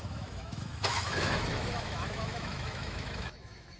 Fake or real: fake